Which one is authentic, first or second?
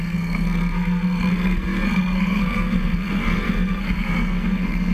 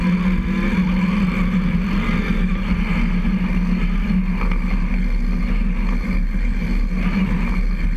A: second